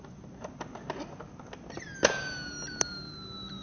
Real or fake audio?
real